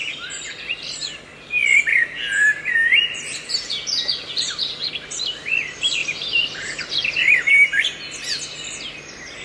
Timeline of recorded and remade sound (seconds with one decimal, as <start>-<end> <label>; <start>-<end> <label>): 0.0-6.0 recorded; 6.0-7.5 remade; 7.5-9.4 recorded